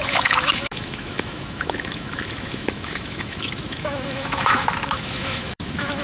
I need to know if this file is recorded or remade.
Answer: remade